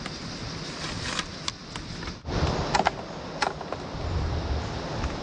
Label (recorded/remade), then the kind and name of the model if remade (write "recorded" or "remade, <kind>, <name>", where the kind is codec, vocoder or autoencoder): recorded